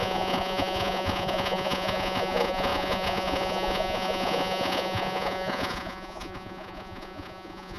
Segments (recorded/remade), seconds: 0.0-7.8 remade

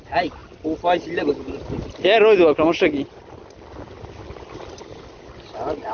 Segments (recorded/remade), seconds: 0.0-5.9 recorded

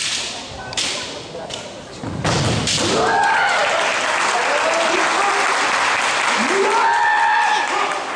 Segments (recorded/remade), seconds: 0.0-8.2 recorded